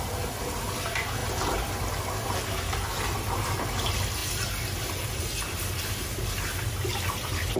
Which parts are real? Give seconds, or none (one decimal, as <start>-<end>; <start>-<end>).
0.0-7.6